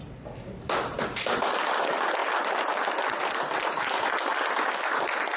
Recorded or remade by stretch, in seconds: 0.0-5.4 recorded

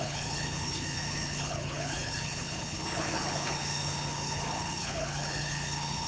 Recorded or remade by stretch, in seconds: 0.0-6.1 remade

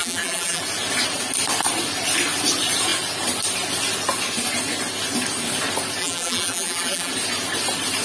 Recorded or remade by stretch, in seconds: 0.0-0.6 remade; 0.6-6.0 recorded; 6.0-7.1 remade; 7.1-8.0 recorded

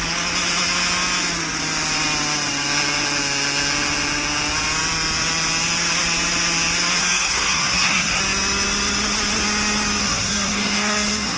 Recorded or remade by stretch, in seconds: 0.0-7.0 recorded; 7.0-8.2 remade; 8.2-10.0 recorded; 10.0-11.4 remade

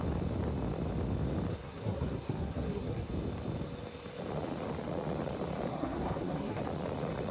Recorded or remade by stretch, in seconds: 0.0-1.5 recorded; 1.5-3.1 remade; 3.1-5.7 recorded; 5.7-6.6 remade; 6.6-7.3 recorded